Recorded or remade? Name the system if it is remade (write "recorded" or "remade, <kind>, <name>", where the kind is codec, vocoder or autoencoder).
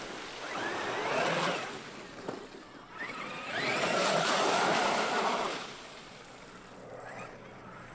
remade, vocoder, BigVGAN v2